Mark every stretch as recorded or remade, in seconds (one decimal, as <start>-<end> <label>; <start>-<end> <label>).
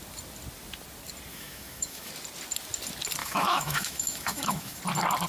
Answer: 0.0-1.3 recorded; 1.3-2.1 remade; 2.1-3.2 recorded; 3.2-4.8 remade; 4.8-5.3 recorded